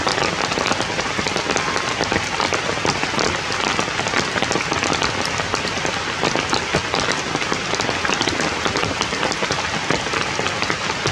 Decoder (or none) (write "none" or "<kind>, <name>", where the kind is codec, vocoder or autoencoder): none